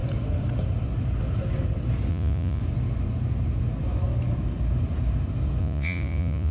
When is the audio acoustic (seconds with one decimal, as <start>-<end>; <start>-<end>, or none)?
0.0-2.1; 2.6-5.6